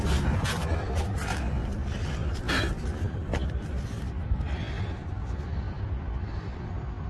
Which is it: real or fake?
real